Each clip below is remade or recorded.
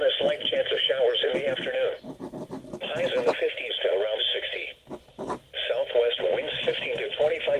recorded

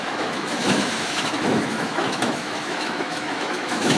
remade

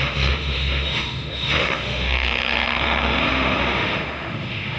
remade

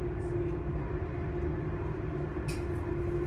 recorded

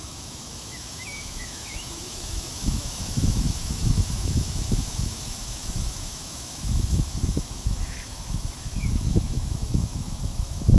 remade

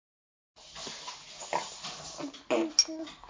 recorded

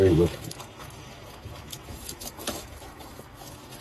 remade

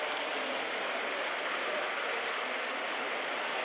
recorded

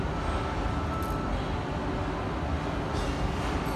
recorded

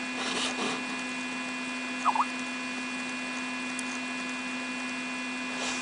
recorded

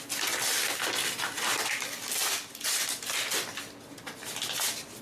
recorded